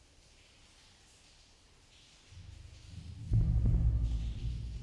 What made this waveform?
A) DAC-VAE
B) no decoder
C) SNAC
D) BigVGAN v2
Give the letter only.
B